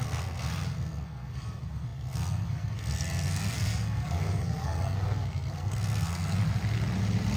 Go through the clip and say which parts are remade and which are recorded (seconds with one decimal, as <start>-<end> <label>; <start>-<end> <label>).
0.0-6.4 remade; 6.4-7.4 recorded